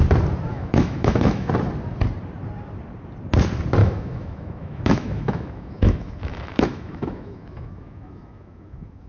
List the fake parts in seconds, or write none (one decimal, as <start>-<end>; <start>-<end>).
0.5-1.5; 3.8-9.1

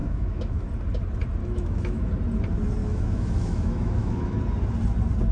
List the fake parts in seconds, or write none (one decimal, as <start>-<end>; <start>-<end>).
0.0-0.6; 1.4-2.1; 2.8-4.4

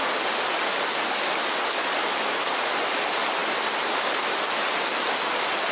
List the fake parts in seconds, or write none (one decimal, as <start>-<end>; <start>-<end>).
none

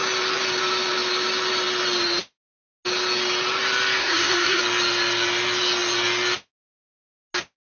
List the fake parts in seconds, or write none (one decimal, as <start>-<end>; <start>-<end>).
4.0-4.6

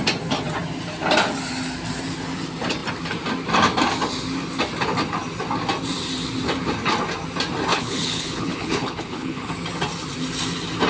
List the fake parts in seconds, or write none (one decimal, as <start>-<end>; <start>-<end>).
7.7-9.5

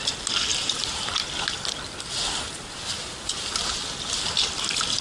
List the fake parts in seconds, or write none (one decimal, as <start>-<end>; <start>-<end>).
0.5-1.1; 3.0-3.6

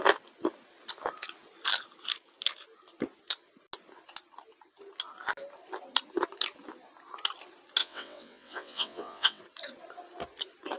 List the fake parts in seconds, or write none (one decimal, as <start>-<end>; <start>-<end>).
7.8-9.4

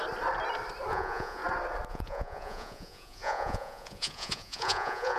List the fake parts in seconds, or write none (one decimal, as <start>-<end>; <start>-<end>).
0.9-1.4; 1.9-5.2